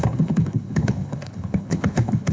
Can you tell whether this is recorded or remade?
remade